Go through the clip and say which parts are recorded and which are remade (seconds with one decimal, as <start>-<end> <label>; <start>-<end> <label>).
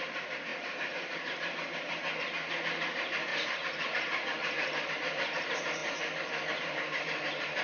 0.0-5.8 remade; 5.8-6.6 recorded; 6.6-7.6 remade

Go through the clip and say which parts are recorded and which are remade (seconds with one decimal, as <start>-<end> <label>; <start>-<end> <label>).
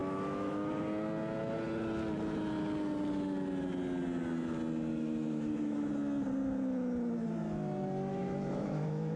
0.0-0.7 remade; 0.7-4.9 recorded; 4.9-5.9 remade; 5.9-8.1 recorded; 8.1-9.2 remade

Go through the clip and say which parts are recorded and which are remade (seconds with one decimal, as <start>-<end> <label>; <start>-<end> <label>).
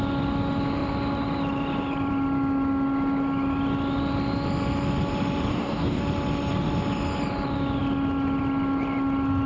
0.0-5.5 recorded; 5.5-6.0 remade; 6.0-9.5 recorded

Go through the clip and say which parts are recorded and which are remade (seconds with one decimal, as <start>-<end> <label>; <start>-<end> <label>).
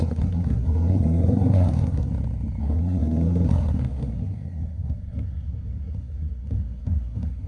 0.0-2.1 remade; 2.1-2.6 recorded; 2.6-7.5 remade